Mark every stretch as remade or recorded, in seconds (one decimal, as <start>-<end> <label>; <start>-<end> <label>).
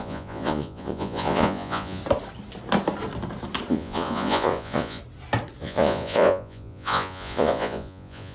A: 0.0-2.0 remade; 2.0-3.7 recorded; 3.7-5.0 remade; 5.0-5.6 recorded; 5.6-8.3 remade